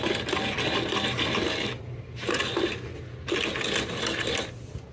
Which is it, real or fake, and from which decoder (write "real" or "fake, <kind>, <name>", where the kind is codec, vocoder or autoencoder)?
real